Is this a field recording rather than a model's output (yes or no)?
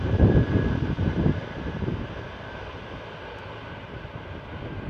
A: no